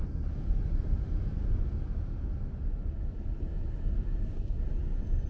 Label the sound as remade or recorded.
recorded